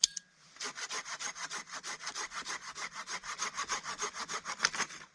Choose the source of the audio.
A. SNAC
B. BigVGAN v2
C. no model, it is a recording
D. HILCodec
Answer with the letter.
C